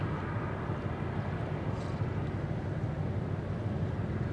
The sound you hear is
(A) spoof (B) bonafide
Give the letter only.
B